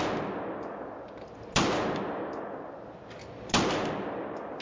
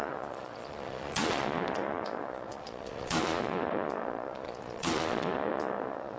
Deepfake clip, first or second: second